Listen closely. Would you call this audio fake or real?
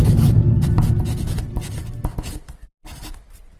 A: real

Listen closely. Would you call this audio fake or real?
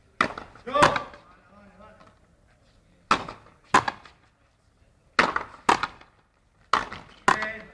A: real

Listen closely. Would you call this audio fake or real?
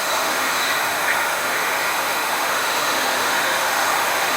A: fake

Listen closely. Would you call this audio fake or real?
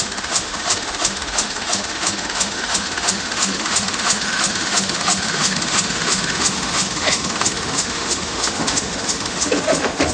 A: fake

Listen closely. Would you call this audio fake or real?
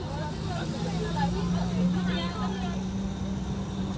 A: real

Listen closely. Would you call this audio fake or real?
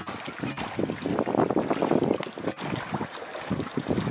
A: real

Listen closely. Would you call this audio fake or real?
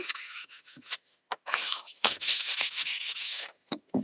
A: fake